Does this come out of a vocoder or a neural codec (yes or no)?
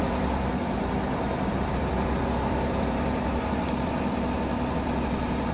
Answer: yes